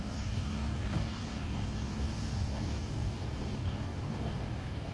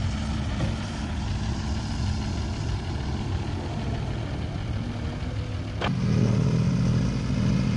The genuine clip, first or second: second